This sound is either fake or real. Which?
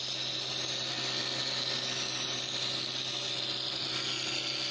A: real